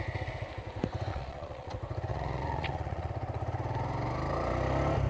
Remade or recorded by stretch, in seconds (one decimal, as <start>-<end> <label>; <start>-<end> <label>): 0.0-1.1 recorded; 1.1-1.7 remade; 1.7-2.1 recorded; 2.1-3.1 remade; 3.1-5.1 recorded